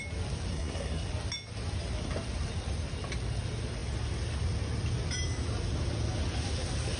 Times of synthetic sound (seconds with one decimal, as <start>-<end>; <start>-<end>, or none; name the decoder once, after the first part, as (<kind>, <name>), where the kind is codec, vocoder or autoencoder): 0.5-1.1 (codec, SNAC)